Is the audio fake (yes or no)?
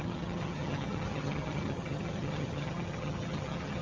yes